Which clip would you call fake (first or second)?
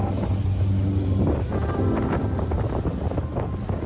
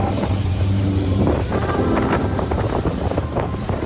second